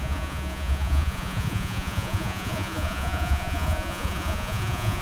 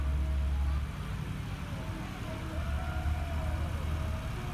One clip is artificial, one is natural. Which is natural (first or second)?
second